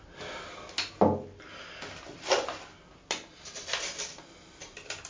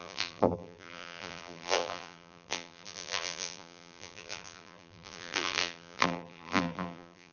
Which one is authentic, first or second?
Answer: first